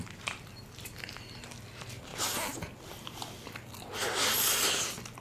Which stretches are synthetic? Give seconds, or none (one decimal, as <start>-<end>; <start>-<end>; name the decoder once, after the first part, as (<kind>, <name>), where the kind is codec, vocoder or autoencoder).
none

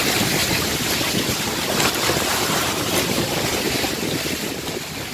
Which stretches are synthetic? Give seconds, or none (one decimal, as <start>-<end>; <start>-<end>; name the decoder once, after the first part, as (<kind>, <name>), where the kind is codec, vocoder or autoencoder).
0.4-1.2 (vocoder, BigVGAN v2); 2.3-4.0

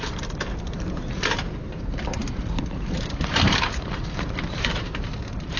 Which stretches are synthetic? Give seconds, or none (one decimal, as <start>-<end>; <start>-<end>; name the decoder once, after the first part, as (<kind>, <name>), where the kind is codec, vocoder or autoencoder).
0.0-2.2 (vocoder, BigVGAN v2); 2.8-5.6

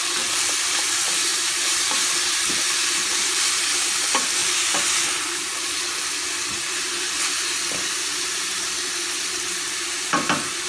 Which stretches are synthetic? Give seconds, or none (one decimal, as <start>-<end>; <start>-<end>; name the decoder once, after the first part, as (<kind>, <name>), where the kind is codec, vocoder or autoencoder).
1.3-3.0 (vocoder, BigVGAN v2)